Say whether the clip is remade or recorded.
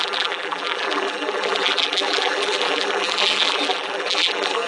remade